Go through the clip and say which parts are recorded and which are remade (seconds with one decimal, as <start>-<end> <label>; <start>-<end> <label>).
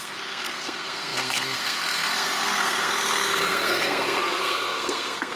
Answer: 0.0-5.4 remade